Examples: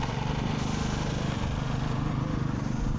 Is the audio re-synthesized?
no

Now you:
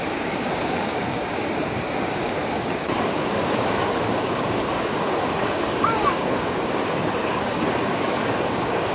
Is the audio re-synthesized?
yes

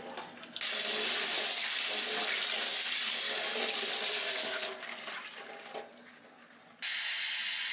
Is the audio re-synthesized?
no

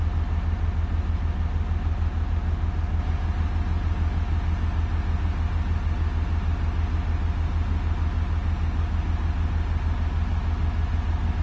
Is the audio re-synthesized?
no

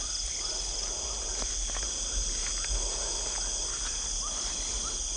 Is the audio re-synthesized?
no